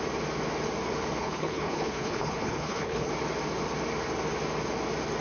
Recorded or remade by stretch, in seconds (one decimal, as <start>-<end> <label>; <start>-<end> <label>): 0.0-1.2 recorded; 1.2-3.1 remade; 3.1-5.2 recorded